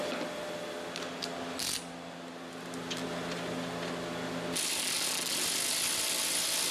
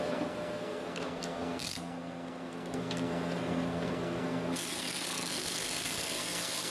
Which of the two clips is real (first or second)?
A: first